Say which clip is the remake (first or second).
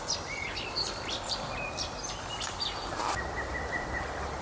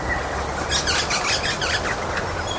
first